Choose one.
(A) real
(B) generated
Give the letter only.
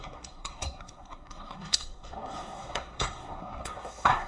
B